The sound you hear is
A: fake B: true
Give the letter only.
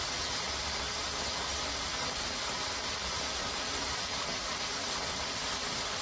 B